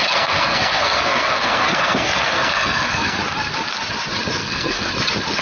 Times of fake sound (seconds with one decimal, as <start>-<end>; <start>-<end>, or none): 0.0-3.2; 4.4-4.9